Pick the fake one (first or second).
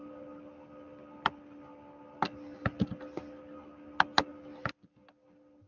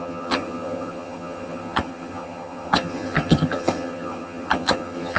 second